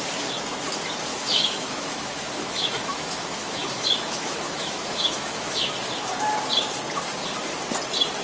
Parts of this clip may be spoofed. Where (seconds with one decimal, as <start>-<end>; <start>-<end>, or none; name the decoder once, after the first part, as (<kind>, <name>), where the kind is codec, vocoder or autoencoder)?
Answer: 1.1-5.7 (autoencoder, DAC-VAE)